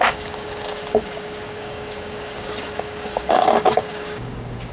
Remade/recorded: remade